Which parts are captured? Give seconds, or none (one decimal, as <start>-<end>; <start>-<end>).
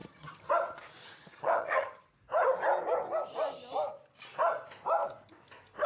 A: 0.5-1.0; 2.1-5.9